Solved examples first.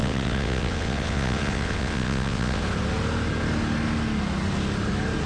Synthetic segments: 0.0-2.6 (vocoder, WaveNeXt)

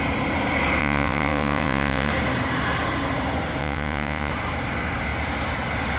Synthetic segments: 0.8-2.1 (vocoder, WaveNeXt); 3.6-4.3

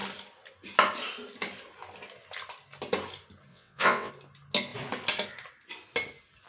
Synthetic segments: 3.5-4.1 (vocoder, WaveNeXt)

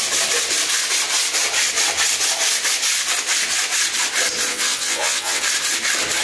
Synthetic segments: 4.5-5.4 (vocoder, WaveNeXt)

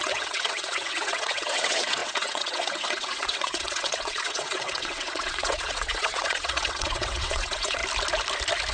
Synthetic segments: 0.0-7.8 (vocoder, WaveNeXt)

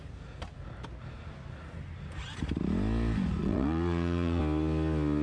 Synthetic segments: 3.4-4.4 (vocoder, WaveNeXt)